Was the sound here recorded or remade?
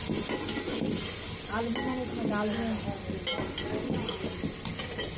recorded